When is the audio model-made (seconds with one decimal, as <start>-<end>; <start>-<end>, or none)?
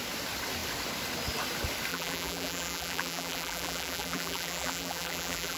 1.9-5.6